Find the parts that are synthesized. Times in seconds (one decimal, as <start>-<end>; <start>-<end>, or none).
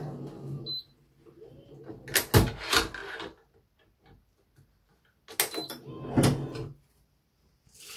none